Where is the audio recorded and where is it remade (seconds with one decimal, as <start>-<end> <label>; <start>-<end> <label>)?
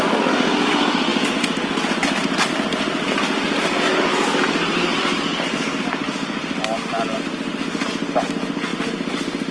0.0-9.5 recorded